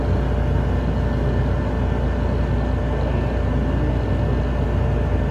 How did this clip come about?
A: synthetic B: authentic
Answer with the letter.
B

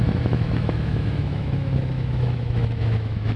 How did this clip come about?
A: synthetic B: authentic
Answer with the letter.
A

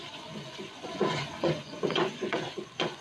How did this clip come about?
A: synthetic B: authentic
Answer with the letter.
A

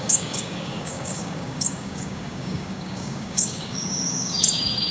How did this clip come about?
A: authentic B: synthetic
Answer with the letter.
B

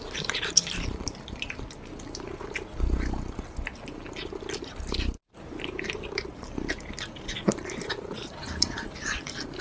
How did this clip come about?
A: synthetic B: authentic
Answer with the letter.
B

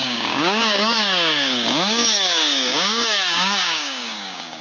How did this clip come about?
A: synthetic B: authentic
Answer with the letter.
A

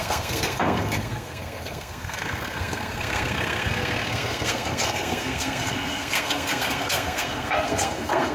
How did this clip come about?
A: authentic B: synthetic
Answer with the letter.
B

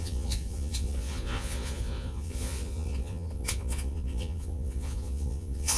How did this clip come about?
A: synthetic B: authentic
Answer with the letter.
A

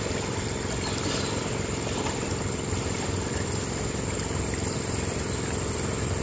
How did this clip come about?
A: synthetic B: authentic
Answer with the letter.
A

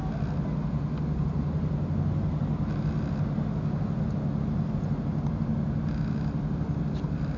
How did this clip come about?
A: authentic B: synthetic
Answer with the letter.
A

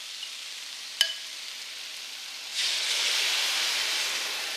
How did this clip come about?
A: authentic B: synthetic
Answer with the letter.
A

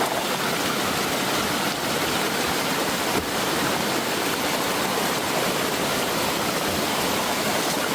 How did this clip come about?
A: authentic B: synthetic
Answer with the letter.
A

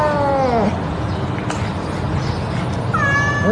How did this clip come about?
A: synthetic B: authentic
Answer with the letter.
B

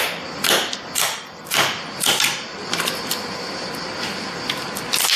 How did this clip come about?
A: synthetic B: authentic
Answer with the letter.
B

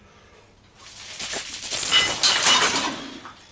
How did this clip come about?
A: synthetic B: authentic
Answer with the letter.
B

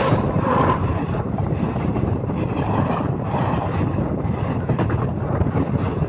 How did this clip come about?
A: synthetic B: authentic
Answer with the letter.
B